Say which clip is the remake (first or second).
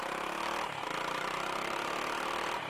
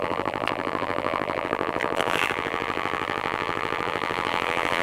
second